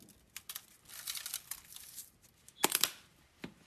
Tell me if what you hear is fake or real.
real